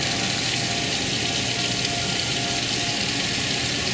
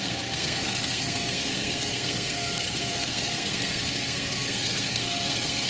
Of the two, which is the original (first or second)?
first